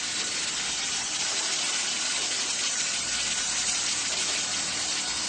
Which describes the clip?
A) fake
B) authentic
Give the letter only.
B